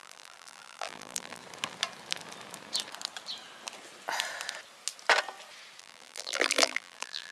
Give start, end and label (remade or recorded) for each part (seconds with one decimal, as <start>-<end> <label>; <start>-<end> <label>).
0.0-1.4 remade; 1.4-5.8 recorded; 5.8-7.3 remade